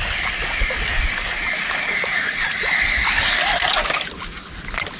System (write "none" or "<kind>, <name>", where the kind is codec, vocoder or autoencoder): none